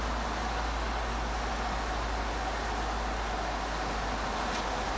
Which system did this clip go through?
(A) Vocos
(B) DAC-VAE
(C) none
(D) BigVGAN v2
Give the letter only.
C